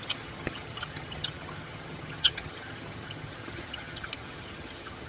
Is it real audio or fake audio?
fake